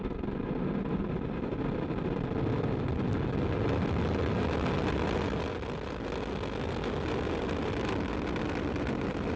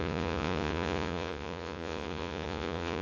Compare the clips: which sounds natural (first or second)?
first